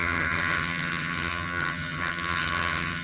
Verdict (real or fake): fake